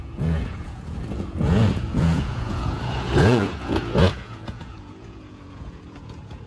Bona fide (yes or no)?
no